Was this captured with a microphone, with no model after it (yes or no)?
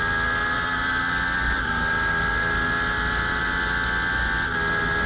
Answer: yes